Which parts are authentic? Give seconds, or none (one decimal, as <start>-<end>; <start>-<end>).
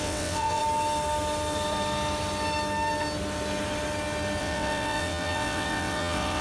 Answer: 0.6-4.4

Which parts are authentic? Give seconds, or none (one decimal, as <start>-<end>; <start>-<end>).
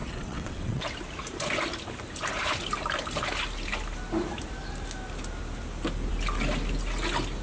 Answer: 0.8-7.4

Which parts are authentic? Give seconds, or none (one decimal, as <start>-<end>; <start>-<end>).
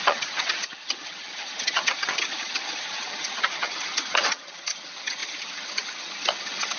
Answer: none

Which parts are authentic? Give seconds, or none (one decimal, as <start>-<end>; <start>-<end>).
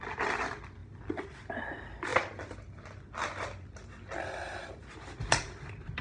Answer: 0.0-0.8; 1.6-6.0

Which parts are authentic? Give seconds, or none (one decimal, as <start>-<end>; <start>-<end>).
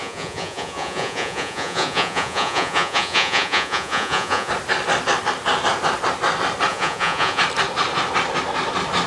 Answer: 4.5-6.7; 7.4-9.1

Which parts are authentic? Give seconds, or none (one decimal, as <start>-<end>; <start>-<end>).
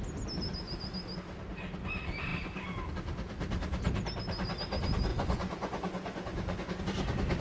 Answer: 0.0-5.1; 6.8-7.4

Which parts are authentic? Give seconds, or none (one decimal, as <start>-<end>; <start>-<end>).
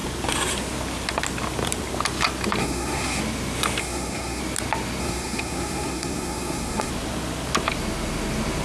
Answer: 0.0-2.6; 3.2-3.8; 4.4-5.0; 6.9-8.6